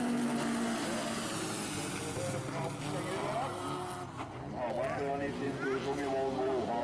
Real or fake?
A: real